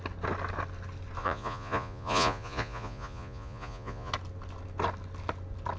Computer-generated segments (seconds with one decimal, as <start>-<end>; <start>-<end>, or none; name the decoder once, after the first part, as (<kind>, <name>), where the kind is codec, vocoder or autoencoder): 1.2-4.1 (vocoder, Vocos)